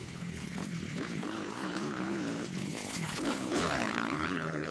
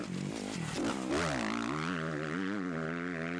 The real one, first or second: second